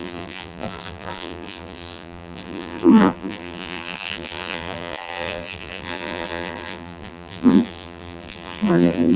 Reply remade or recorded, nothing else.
remade